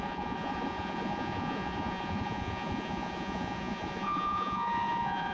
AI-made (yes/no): yes